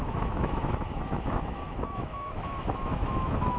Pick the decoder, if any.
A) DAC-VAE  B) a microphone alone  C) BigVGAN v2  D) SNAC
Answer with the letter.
A